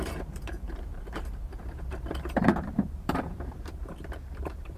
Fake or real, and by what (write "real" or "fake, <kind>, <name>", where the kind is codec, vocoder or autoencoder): fake, vocoder, BigVGAN v2